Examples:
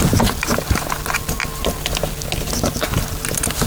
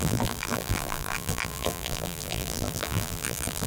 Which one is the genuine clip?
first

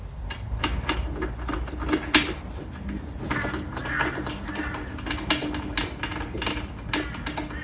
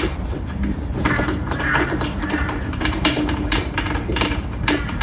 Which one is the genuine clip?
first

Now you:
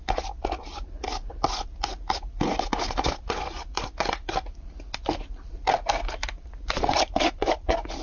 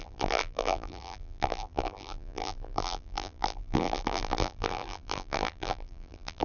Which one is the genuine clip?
first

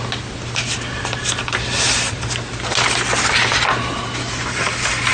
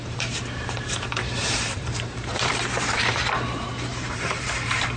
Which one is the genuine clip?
first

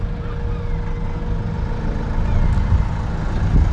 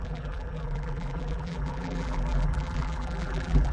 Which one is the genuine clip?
first